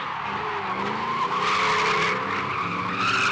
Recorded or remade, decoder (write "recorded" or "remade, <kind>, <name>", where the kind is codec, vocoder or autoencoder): recorded